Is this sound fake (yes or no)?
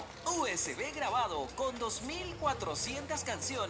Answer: no